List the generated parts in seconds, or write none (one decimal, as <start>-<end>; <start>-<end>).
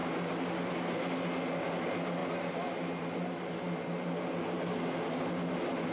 none